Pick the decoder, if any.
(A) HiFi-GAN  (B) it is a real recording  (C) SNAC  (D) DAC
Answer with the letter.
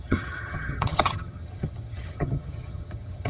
A